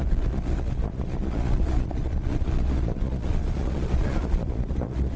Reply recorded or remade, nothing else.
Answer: remade